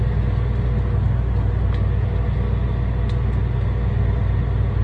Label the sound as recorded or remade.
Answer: recorded